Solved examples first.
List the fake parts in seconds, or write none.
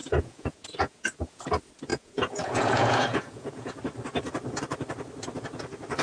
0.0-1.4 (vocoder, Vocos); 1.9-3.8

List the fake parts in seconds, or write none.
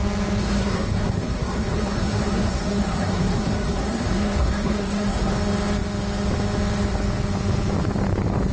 0.4-5.3 (codec, SNAC)